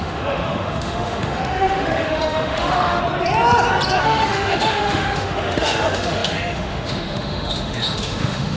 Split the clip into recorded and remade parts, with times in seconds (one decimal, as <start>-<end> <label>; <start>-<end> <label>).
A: 0.0-3.0 remade; 3.0-4.0 recorded; 4.0-8.6 remade